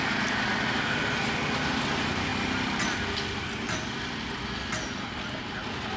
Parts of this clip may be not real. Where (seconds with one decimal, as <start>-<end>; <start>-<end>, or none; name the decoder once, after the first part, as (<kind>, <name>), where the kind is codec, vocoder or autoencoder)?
none